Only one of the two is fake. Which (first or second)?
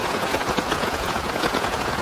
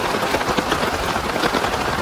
first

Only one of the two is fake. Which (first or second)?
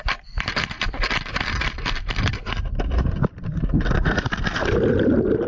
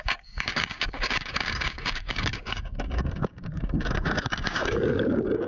second